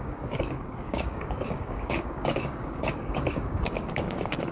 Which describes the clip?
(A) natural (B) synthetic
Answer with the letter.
B